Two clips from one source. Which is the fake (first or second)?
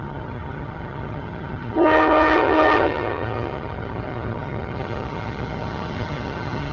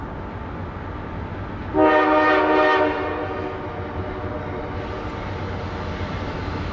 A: first